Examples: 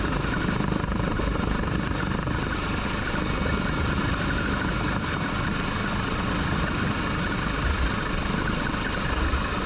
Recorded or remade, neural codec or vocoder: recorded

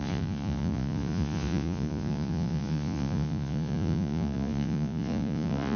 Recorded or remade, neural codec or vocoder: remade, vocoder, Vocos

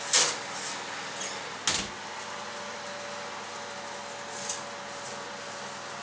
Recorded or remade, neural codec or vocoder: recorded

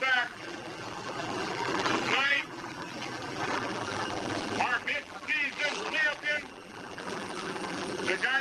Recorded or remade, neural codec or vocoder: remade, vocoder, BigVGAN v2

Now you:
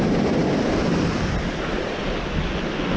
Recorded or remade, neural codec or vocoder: recorded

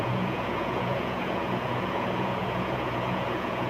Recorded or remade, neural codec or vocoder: remade, vocoder, Vocos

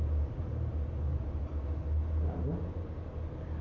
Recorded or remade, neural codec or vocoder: recorded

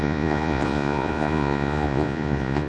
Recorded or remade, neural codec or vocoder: remade, vocoder, Vocos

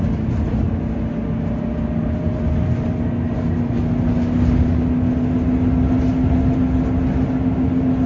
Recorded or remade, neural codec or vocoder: recorded